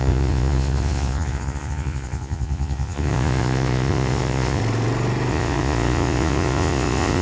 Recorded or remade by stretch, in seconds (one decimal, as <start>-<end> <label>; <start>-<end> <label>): 0.0-4.6 remade; 4.6-5.3 recorded; 5.3-7.2 remade